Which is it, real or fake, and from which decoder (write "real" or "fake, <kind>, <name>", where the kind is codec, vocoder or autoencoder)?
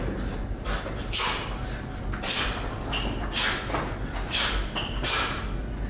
real